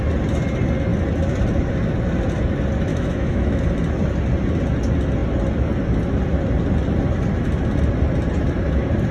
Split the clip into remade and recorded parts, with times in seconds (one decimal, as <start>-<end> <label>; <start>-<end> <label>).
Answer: 0.0-2.9 recorded; 2.9-3.6 remade; 3.6-9.1 recorded